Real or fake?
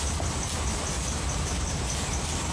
real